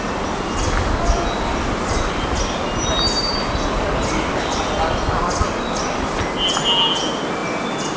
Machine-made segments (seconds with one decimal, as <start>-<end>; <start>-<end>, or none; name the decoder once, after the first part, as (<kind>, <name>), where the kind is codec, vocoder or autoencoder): none